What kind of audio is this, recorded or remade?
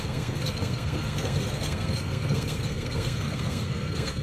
remade